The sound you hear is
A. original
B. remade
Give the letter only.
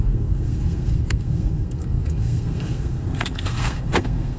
B